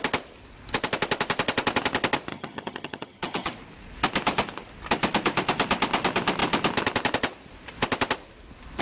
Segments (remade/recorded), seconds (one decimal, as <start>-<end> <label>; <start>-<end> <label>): 0.0-2.3 recorded; 2.3-3.5 remade; 3.5-8.8 recorded